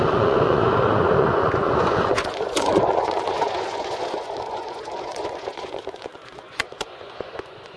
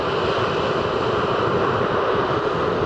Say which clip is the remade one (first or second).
first